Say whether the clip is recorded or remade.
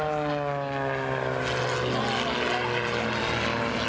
recorded